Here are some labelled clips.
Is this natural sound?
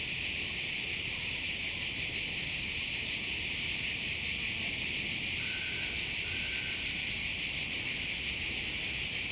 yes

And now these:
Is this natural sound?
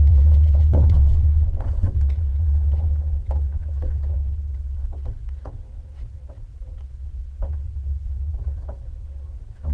no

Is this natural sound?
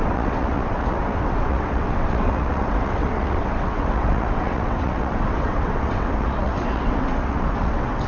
no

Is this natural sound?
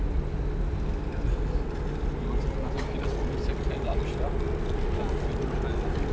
yes